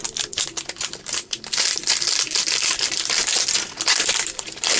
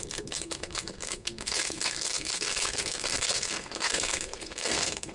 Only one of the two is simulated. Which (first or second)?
second